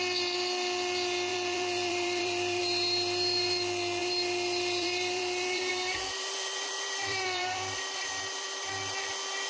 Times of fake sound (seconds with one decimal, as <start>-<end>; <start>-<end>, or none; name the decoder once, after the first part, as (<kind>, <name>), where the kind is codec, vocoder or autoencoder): 1.3-2.6 (vocoder, BigVGAN v2); 4.0-8.7